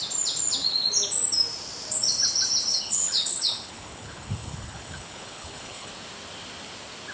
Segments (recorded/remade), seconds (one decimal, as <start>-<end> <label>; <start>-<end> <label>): 0.0-2.7 recorded; 2.7-5.9 remade; 5.9-7.1 recorded